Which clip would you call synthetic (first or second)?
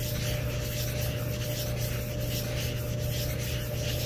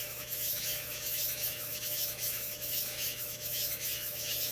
second